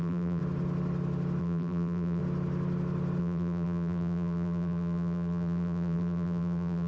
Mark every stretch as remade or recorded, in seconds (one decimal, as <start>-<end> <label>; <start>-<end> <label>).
0.0-0.4 remade; 0.4-1.4 recorded; 1.4-2.2 remade; 2.2-3.2 recorded; 3.2-6.9 remade